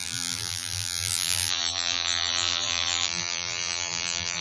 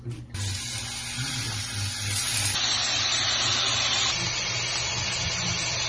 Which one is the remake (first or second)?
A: first